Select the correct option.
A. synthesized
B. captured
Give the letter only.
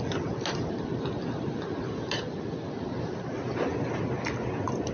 B